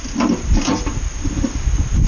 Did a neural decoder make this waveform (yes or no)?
no